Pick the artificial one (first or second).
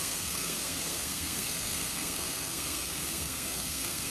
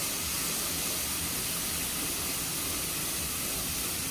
first